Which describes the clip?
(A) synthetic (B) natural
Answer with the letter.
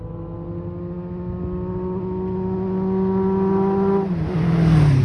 B